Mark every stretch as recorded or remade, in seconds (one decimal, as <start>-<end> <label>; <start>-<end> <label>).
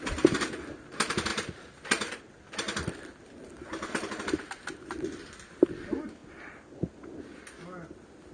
0.0-8.3 recorded